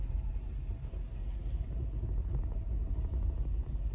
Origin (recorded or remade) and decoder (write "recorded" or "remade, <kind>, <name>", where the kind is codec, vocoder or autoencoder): recorded